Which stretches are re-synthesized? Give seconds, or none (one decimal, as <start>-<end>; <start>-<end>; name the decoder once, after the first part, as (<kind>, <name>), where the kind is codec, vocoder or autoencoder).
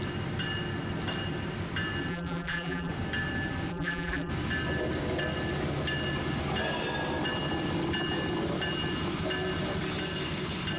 2.1-2.9 (vocoder, BigVGAN v2); 3.7-4.3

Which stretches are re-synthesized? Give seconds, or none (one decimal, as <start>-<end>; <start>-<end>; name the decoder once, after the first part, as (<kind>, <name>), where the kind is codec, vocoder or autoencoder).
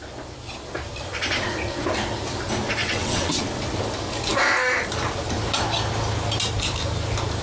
2.8-3.4 (vocoder, WaveNeXt)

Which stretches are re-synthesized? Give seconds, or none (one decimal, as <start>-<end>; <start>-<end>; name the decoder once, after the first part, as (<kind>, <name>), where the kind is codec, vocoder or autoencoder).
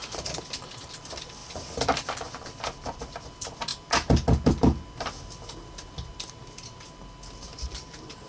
1.4-3.0 (vocoder, BigVGAN v2); 7.5-8.3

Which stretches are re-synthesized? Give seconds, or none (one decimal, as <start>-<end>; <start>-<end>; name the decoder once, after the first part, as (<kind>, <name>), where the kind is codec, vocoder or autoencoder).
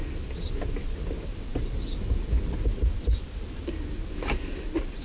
none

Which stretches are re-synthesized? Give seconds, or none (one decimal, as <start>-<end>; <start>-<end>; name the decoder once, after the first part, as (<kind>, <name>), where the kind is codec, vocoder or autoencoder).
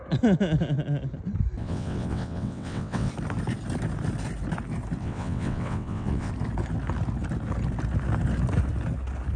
1.6-3.1 (vocoder, WaveNeXt); 5.0-6.3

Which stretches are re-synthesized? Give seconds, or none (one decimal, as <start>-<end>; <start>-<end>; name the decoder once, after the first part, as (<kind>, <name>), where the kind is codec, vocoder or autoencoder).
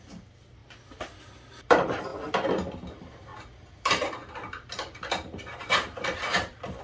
0.0-0.6 (vocoder, BigVGAN v2); 1.5-6.8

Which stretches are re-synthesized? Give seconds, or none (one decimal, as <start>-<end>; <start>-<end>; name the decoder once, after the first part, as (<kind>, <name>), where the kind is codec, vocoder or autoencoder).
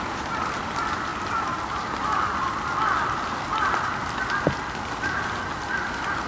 none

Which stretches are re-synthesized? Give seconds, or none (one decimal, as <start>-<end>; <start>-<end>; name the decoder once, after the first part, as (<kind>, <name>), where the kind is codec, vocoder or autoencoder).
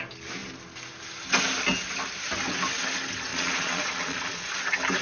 3.3-4.5 (vocoder, Vocos)